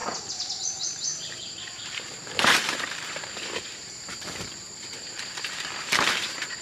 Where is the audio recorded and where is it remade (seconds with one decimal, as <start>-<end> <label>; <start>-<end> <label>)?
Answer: 0.0-0.6 recorded; 0.6-6.6 remade